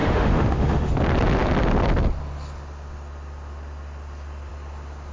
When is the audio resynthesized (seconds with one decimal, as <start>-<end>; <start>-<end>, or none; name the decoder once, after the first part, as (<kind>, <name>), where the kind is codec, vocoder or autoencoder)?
0.0-0.9 (autoencoder, DAC-VAE)